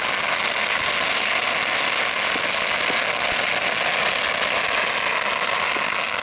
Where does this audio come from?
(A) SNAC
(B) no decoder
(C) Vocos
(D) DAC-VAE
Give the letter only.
B